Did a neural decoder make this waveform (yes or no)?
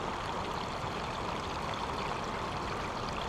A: no